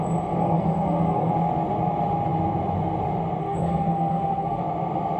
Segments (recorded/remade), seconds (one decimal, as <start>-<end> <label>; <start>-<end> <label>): 0.0-0.4 recorded; 0.4-1.3 remade; 1.3-3.4 recorded; 3.4-4.6 remade; 4.6-5.2 recorded